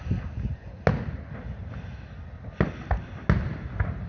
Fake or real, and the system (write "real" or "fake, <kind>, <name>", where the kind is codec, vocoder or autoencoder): real